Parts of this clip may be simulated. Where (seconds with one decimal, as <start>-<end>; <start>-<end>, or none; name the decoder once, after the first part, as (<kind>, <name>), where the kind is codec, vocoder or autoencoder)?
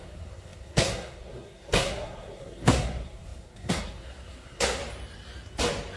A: 0.0-4.8 (codec, SNAC)